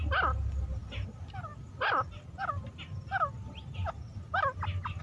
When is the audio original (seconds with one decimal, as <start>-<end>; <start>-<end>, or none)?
0.0-5.0